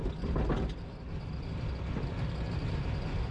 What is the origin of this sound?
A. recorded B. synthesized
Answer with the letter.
A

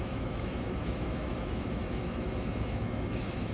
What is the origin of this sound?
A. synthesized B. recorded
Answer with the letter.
A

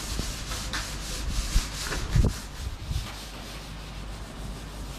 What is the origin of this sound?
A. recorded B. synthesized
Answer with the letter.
A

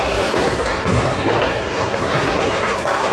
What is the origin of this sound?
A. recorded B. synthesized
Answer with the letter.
B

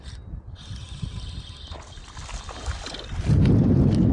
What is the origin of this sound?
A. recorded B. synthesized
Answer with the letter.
A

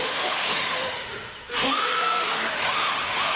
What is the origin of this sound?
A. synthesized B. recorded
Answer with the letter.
A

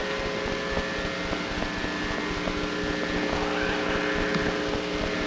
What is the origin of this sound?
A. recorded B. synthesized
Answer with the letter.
A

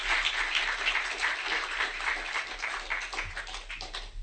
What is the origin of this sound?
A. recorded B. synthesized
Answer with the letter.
A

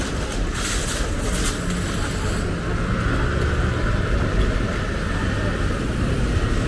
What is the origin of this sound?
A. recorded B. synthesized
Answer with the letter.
A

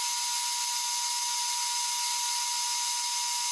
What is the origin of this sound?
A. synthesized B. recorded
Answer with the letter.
B